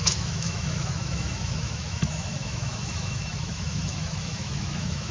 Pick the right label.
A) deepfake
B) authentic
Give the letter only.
A